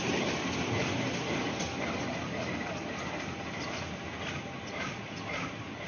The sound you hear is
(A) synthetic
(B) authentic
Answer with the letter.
B